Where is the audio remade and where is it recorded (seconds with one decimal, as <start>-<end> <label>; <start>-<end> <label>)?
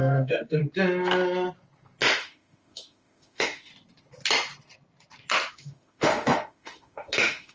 0.0-0.6 remade; 0.6-2.2 recorded; 2.2-3.7 remade; 3.7-5.5 recorded; 5.5-7.5 remade